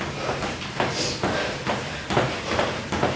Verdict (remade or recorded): recorded